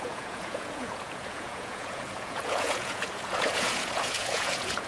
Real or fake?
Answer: fake